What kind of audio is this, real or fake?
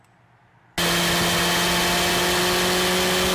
real